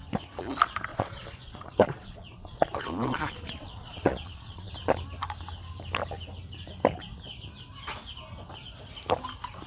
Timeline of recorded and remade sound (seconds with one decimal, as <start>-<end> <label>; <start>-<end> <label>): 0.0-0.9 recorded; 0.9-4.7 remade; 4.7-9.7 recorded